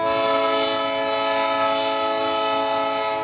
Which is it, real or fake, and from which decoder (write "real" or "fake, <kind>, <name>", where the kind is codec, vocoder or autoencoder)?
real